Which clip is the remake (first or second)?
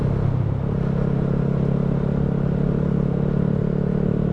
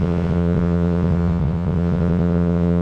second